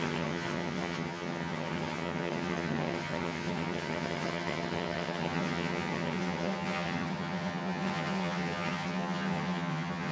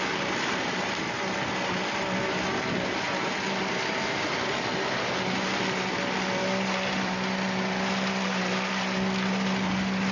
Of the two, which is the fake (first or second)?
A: first